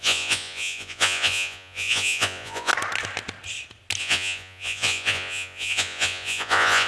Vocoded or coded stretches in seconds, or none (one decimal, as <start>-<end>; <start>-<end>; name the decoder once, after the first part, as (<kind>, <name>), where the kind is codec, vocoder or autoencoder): 0.0-2.7 (vocoder, Vocos); 4.0-6.9